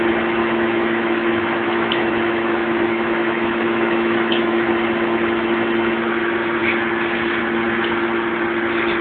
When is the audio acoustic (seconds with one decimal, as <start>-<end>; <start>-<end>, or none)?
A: 0.0-0.4; 4.7-9.0